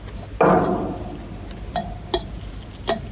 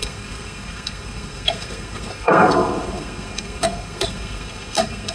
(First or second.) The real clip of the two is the first